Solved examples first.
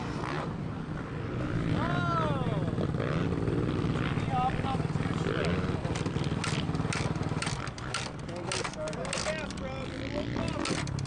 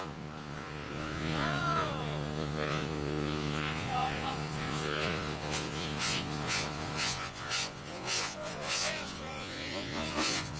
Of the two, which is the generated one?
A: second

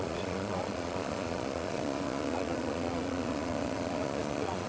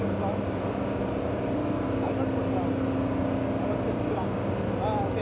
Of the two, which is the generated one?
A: first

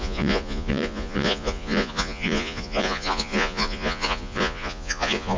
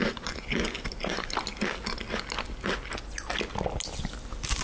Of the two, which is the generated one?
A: first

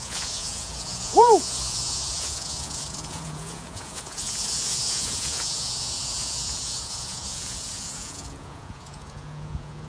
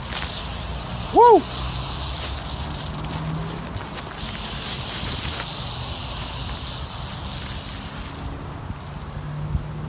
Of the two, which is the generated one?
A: first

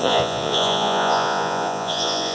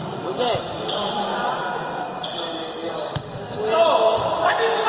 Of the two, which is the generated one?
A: first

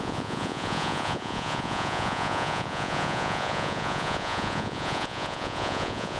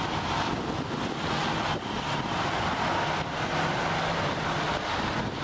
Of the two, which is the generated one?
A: first